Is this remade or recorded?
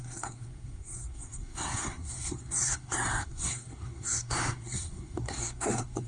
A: remade